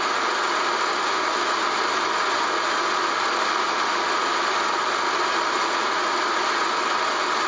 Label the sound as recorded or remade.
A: recorded